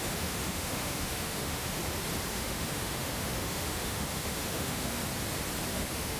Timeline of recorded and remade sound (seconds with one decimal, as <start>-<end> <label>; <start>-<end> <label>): 0.0-1.8 remade; 1.8-2.3 recorded; 2.3-5.0 remade; 5.0-5.7 recorded; 5.7-6.2 remade